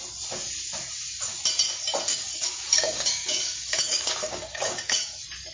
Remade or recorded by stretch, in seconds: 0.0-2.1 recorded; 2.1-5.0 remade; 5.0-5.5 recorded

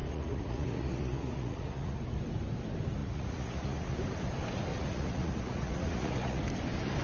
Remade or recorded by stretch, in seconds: 0.0-2.0 remade; 2.0-3.0 recorded; 3.0-4.0 remade; 4.0-4.7 recorded; 4.7-6.4 remade; 6.4-7.0 recorded

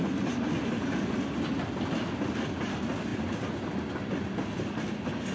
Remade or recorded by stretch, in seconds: 0.0-5.3 recorded

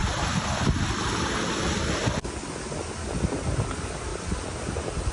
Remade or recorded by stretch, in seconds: 0.0-1.0 remade; 1.0-4.1 recorded; 4.1-5.1 remade